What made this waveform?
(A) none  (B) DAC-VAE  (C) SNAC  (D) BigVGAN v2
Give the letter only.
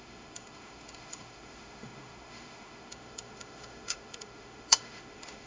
B